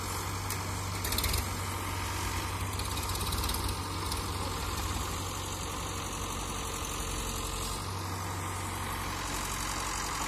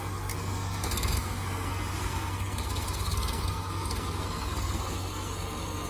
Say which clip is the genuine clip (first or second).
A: first